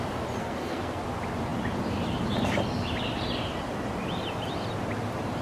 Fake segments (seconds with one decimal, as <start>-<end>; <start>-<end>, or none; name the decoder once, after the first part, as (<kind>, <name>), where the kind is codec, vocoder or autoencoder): 0.4-1.0 (codec, SNAC)